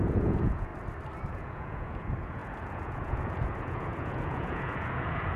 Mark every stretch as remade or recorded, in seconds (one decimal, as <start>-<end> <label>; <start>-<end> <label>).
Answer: 0.0-0.7 remade; 0.7-1.3 recorded; 1.3-5.4 remade